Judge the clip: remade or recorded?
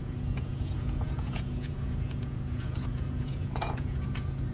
remade